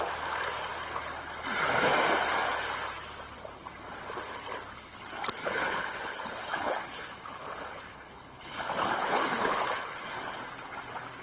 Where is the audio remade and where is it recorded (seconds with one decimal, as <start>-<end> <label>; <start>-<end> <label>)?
0.0-5.4 recorded; 5.4-10.4 remade; 10.4-11.2 recorded